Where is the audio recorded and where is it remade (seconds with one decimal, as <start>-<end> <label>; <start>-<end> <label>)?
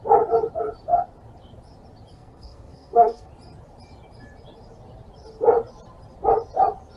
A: 0.0-2.1 recorded; 2.1-3.3 remade; 3.3-7.0 recorded